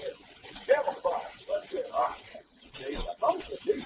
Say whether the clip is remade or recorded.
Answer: remade